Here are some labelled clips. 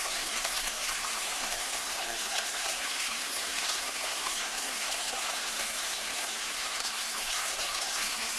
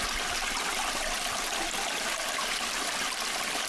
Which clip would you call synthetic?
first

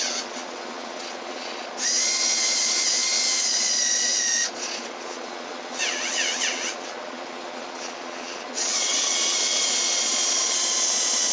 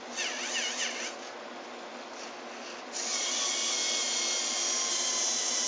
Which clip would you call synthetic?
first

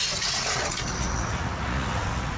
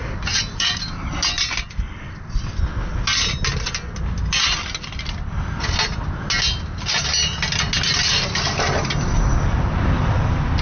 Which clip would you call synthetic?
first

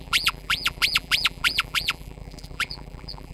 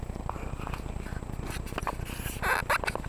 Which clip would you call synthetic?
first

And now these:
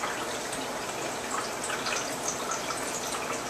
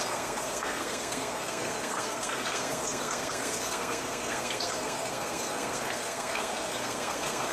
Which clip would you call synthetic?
second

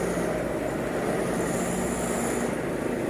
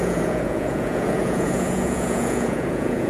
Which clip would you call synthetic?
second